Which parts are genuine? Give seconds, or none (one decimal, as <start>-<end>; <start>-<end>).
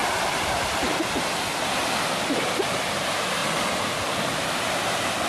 0.0-5.3